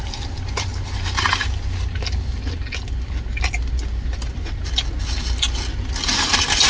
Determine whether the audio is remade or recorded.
recorded